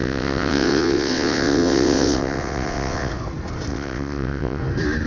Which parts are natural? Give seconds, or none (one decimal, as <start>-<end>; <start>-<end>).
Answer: 3.1-3.7; 4.6-5.1